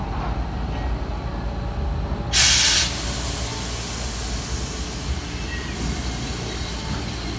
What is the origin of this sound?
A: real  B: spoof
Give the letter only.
A